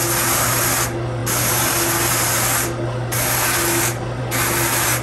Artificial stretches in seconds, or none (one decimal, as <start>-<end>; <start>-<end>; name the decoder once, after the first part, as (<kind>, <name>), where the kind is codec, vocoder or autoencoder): none